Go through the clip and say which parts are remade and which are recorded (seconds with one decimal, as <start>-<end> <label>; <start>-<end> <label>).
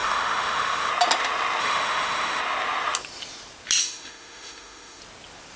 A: 0.0-0.9 remade; 0.9-1.6 recorded; 1.6-2.4 remade; 2.4-3.8 recorded; 3.8-5.0 remade; 5.0-5.6 recorded